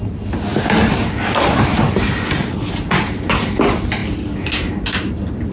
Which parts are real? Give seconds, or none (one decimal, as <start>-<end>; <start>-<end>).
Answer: 0.0-0.8; 3.3-5.5